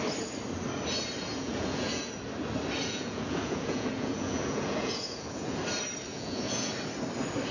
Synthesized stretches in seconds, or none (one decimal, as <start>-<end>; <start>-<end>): 1.3-2.1; 2.8-5.6; 6.1-6.7